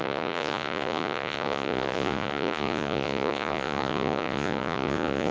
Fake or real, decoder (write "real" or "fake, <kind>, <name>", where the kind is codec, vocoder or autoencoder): fake, vocoder, Vocos